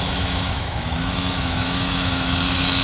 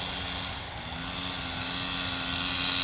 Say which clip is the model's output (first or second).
first